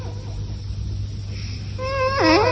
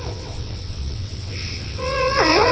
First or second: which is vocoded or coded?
second